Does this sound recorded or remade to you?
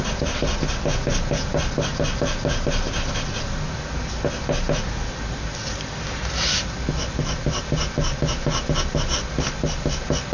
recorded